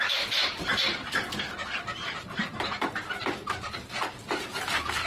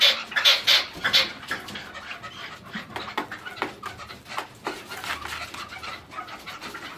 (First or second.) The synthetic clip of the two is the first